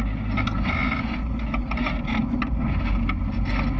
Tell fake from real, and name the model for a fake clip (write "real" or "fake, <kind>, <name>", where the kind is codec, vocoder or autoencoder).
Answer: real